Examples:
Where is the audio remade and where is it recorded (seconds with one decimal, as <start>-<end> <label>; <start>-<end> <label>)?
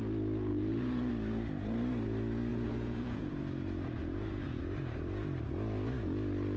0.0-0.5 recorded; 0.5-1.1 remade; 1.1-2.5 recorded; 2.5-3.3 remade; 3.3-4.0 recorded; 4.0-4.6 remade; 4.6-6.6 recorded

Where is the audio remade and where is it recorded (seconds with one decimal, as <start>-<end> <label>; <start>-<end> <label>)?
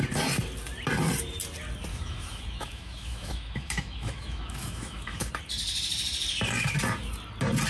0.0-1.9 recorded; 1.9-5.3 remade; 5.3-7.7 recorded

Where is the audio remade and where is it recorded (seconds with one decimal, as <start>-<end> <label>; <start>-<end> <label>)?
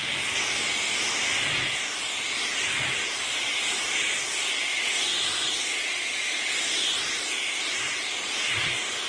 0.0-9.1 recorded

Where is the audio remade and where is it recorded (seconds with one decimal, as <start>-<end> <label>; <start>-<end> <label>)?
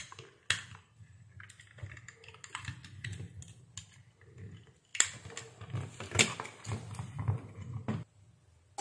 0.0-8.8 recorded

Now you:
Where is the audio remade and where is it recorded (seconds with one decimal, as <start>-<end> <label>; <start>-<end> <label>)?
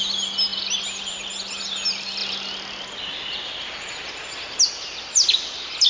0.0-5.9 recorded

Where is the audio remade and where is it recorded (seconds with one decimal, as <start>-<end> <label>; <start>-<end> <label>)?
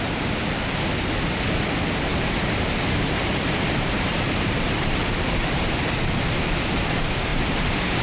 0.0-2.1 recorded; 2.1-6.1 remade; 6.1-7.3 recorded; 7.3-8.0 remade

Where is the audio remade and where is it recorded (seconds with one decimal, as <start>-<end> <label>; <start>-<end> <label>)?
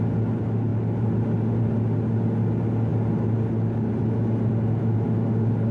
0.0-5.7 recorded